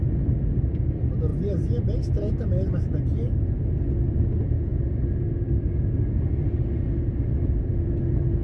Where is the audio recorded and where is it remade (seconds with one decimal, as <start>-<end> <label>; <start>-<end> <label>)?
0.0-1.3 recorded; 1.3-2.3 remade; 2.3-8.4 recorded